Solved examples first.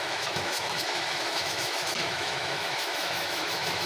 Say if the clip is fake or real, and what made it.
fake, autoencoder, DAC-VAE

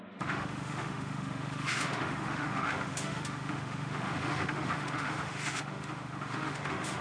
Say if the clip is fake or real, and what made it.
fake, autoencoder, DAC-VAE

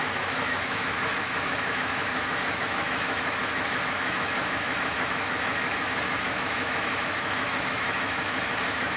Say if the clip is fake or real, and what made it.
fake, autoencoder, DAC-VAE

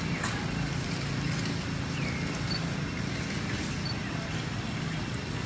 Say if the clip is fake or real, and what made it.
real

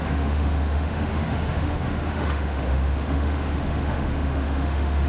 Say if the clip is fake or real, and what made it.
fake, autoencoder, DAC-VAE